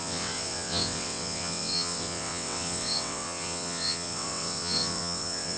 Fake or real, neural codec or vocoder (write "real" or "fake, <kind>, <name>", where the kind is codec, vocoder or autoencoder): fake, vocoder, WaveNeXt